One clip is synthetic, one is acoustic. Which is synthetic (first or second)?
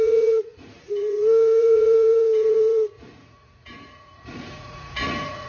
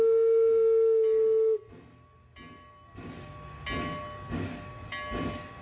first